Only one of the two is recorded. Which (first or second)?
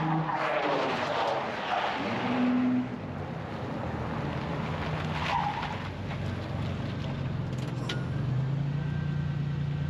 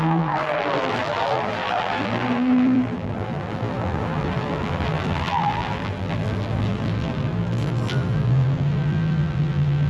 first